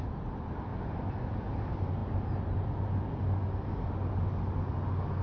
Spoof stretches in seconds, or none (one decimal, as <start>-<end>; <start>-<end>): none